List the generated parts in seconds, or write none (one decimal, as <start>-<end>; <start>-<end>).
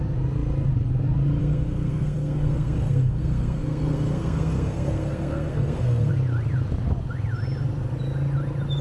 1.4-6.1